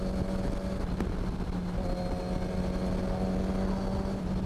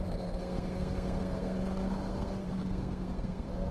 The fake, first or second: second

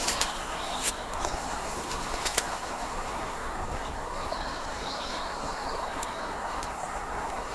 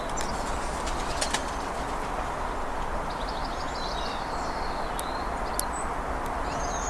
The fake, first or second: first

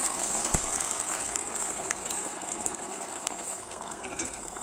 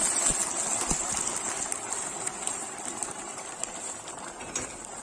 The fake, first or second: first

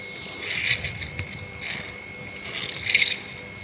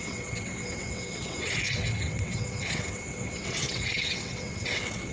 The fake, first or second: second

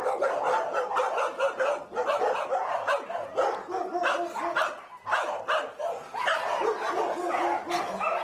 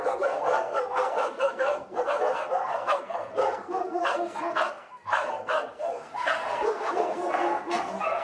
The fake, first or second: second